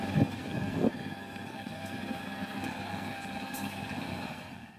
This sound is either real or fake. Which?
fake